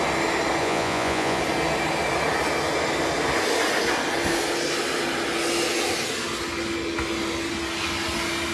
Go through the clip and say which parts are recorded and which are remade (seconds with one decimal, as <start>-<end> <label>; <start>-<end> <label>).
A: 0.0-0.6 recorded; 0.6-1.4 remade; 1.4-8.5 recorded